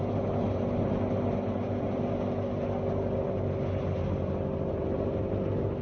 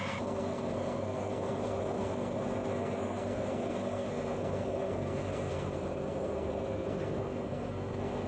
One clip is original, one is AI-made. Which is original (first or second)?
first